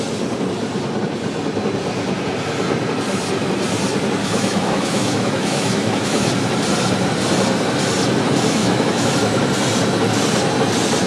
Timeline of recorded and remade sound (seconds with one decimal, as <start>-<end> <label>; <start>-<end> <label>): 0.0-4.2 recorded; 4.2-6.3 remade; 6.3-8.6 recorded; 8.6-9.1 remade; 9.1-11.1 recorded